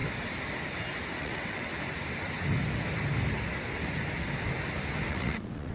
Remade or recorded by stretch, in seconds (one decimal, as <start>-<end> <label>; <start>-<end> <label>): 0.0-1.2 recorded; 1.2-1.7 remade; 1.7-5.1 recorded; 5.1-5.7 remade